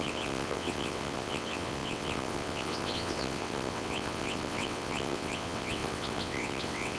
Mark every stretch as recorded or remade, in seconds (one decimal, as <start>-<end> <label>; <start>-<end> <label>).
0.0-7.0 remade